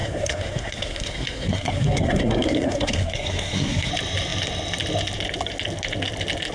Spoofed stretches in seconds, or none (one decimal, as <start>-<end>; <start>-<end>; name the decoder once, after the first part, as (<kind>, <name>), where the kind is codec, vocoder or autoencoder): 0.0-3.9 (codec, SNAC)